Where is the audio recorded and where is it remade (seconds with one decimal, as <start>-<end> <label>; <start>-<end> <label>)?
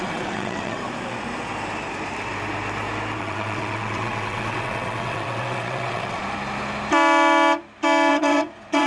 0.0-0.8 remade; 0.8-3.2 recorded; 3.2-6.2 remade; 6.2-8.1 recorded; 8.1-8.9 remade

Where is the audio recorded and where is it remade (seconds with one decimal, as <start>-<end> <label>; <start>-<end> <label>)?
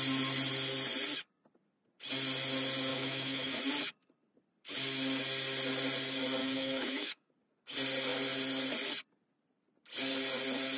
0.0-2.9 recorded; 2.9-3.6 remade; 3.6-6.4 recorded; 6.4-7.3 remade; 7.3-10.8 recorded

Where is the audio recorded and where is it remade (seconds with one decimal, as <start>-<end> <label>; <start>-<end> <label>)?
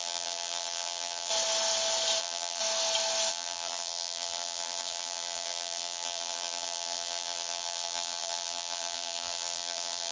0.0-1.3 remade; 1.3-2.2 recorded; 2.2-2.6 remade; 2.6-3.3 recorded; 3.3-10.1 remade